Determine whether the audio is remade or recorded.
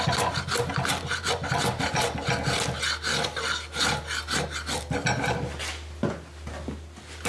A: recorded